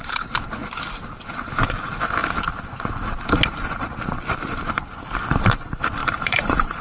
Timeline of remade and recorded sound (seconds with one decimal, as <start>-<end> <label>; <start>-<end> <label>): 0.0-6.0 recorded; 6.0-6.8 remade